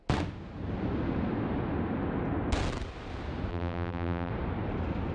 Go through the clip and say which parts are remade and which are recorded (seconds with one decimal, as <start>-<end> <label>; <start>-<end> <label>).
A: 0.0-3.5 recorded; 3.5-4.3 remade; 4.3-5.1 recorded